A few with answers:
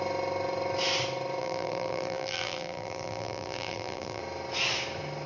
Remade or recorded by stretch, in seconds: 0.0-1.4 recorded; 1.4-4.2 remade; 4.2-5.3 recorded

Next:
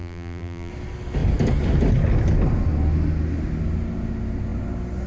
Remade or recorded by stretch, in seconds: 0.0-0.7 remade; 0.7-5.1 recorded

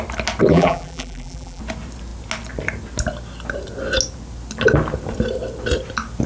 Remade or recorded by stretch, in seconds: 0.0-0.5 recorded; 0.5-1.6 remade; 1.6-6.3 recorded

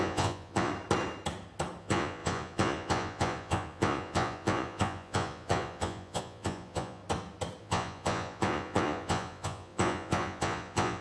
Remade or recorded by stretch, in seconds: 0.0-0.7 remade; 0.7-1.8 recorded; 1.8-7.0 remade; 7.0-7.6 recorded; 7.6-11.0 remade